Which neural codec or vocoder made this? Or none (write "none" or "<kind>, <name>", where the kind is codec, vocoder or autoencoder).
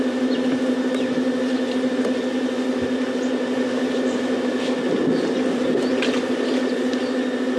none